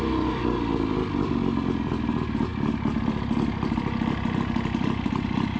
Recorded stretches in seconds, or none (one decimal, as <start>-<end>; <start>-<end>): 0.0-5.6